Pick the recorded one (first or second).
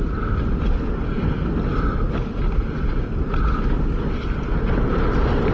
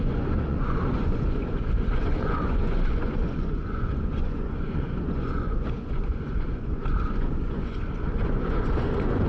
first